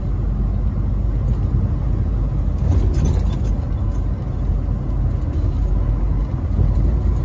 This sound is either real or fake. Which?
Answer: real